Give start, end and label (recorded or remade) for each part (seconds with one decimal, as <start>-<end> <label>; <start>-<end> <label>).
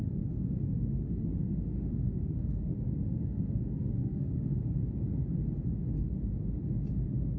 0.0-4.8 remade; 4.8-6.9 recorded; 6.9-7.4 remade